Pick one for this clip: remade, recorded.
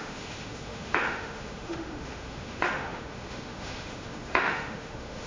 remade